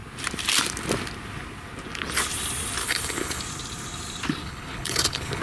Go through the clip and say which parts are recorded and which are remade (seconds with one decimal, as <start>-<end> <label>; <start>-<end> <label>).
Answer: 0.0-2.8 recorded; 2.8-3.4 remade; 3.4-4.4 recorded; 4.4-5.4 remade